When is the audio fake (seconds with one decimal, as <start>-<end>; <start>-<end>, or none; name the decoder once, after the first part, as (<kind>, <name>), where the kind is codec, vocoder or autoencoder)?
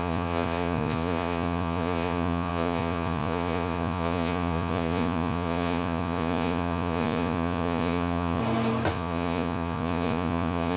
0.0-8.4 (vocoder, Vocos); 8.9-10.8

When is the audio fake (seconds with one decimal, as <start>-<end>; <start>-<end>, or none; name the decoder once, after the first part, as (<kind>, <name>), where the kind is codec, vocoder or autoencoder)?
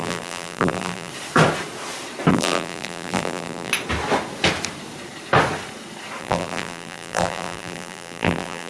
0.0-1.1 (vocoder, BigVGAN v2); 2.3-3.7; 6.2-8.7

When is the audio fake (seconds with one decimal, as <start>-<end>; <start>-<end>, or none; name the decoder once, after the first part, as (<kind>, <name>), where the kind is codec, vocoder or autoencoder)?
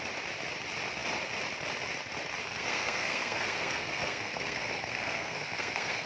2.4-6.1 (codec, SNAC)